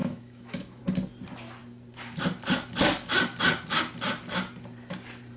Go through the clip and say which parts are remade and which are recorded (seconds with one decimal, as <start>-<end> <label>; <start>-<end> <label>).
0.0-0.8 remade; 0.8-5.4 recorded